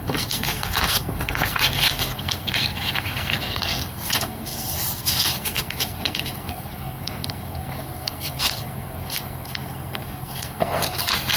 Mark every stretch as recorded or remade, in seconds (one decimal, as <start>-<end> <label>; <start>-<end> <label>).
0.0-11.4 remade